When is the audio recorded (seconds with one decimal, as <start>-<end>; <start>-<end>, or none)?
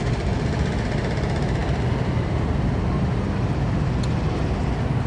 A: 0.0-5.1